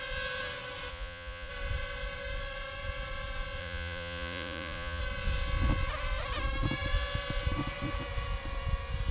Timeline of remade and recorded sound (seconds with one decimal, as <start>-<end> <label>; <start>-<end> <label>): 0.0-0.9 recorded; 0.9-1.5 remade; 1.5-3.6 recorded; 3.6-5.0 remade; 5.0-9.1 recorded